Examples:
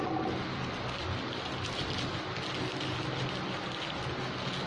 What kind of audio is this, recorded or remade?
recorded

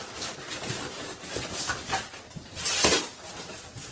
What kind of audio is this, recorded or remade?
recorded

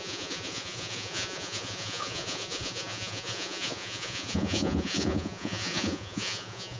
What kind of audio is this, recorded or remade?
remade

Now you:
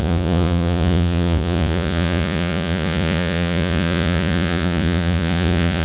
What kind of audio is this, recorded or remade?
remade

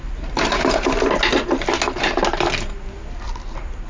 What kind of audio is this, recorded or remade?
recorded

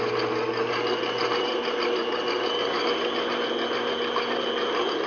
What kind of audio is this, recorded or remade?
recorded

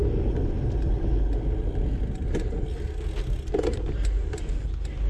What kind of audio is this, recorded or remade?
recorded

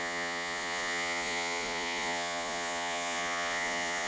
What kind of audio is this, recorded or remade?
remade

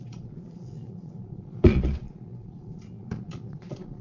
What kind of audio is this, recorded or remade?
remade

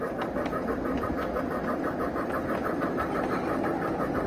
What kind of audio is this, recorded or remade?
recorded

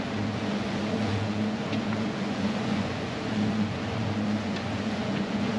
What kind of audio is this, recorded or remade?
remade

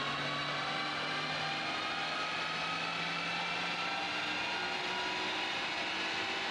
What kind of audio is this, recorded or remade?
recorded